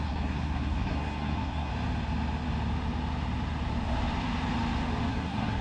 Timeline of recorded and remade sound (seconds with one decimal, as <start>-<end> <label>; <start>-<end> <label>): 0.0-1.7 remade; 1.7-5.1 recorded; 5.1-5.6 remade